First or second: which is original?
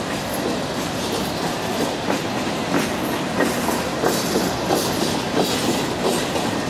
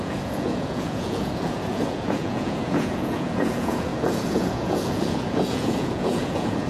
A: first